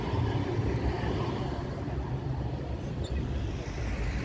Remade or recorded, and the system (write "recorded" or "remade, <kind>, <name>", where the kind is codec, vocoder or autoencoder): recorded